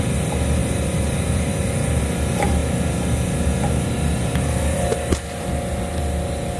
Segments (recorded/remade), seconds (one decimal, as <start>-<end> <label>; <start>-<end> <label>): 0.0-0.6 recorded; 0.6-2.0 remade; 2.0-6.6 recorded